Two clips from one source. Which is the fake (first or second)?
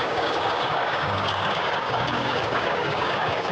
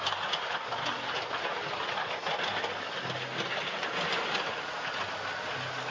first